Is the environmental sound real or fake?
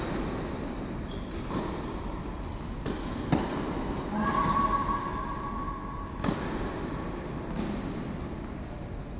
real